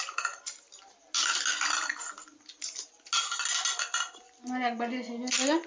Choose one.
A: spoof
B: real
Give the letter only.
B